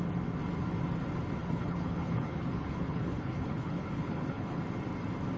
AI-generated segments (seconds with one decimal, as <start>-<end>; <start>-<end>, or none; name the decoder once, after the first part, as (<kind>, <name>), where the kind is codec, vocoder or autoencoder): 1.4-4.6 (codec, HILCodec)